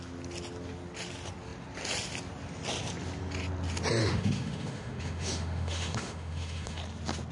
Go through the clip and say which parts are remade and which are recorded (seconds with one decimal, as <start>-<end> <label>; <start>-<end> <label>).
0.0-4.0 recorded; 4.0-6.8 remade; 6.8-7.3 recorded